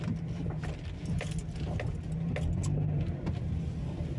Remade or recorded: recorded